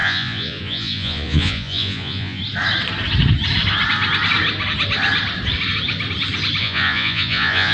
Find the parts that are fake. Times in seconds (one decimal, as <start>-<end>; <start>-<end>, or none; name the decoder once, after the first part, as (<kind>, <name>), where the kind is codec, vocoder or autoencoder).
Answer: 0.0-2.4 (vocoder, Vocos); 6.6-7.7